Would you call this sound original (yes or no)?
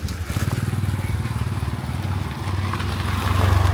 yes